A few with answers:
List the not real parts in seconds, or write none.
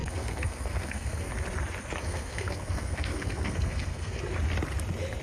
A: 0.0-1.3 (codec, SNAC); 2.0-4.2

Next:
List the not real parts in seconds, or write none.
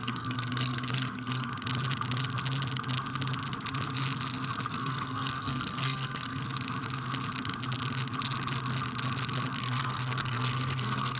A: 0.0-1.5 (codec, SNAC); 4.7-6.4; 9.6-11.2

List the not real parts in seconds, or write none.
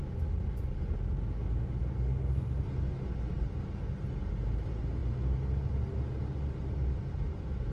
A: 1.8-2.5 (codec, SNAC)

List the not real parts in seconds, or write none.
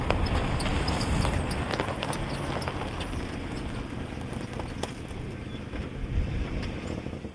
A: none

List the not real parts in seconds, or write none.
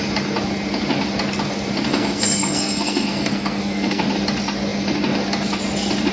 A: 1.9-4.0 (codec, SNAC)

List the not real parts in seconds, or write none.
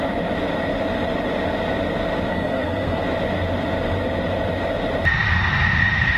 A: 2.3-3.0 (codec, SNAC)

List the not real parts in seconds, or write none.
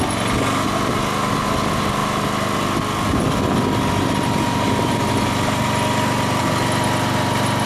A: none